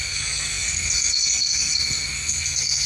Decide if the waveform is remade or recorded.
remade